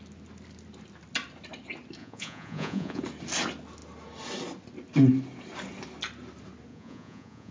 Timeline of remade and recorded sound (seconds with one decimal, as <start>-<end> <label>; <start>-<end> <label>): 0.0-2.0 recorded; 2.0-3.0 remade; 3.0-6.7 recorded; 6.7-7.5 remade